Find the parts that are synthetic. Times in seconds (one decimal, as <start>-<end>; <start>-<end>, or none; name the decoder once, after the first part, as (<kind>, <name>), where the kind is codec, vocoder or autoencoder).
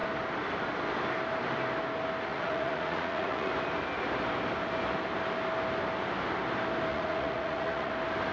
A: 2.3-3.5 (vocoder, Vocos); 6.9-7.9